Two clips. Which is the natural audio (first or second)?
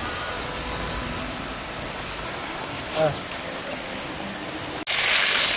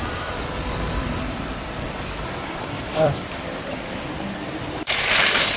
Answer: first